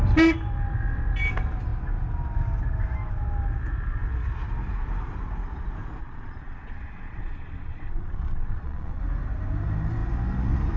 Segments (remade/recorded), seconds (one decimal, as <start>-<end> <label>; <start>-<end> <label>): 0.0-6.0 recorded; 6.0-9.0 remade; 9.0-10.8 recorded

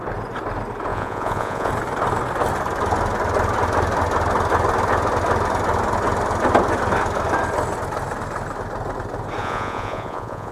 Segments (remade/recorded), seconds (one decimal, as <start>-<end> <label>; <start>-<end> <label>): 0.0-0.9 recorded; 0.9-1.7 remade; 1.7-9.4 recorded; 9.4-10.5 remade

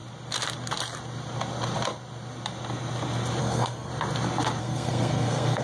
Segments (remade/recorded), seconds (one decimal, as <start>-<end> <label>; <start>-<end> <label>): 0.0-3.4 recorded; 3.4-3.9 remade; 3.9-4.6 recorded; 4.6-5.6 remade

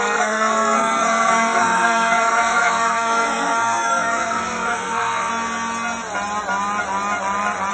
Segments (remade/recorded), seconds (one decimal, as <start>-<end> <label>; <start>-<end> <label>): 0.0-5.3 remade; 5.3-7.7 recorded

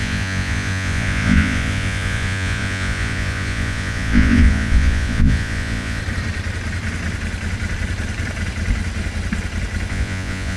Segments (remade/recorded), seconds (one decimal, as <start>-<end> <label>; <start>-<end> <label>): 0.0-6.0 remade; 6.0-9.9 recorded; 9.9-10.6 remade

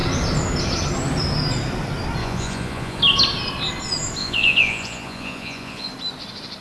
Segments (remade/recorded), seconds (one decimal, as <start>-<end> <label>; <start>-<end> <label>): 0.0-2.2 recorded; 2.2-3.0 remade; 3.0-4.2 recorded; 4.2-5.9 remade; 5.9-6.6 recorded

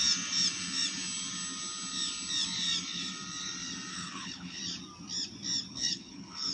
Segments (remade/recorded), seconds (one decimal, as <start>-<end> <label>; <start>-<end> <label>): 0.0-3.9 recorded; 3.9-4.6 remade; 4.6-5.7 recorded; 5.7-6.5 remade